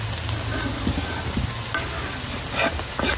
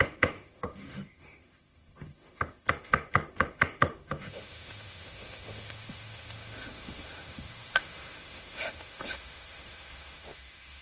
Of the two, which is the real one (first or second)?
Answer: first